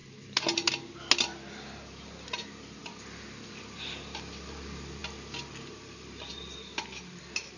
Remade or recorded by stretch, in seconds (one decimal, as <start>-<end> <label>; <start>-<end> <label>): 0.0-7.6 recorded